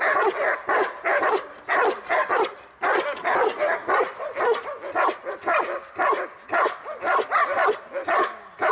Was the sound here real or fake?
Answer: real